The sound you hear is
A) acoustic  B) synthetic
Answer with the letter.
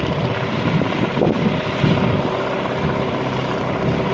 A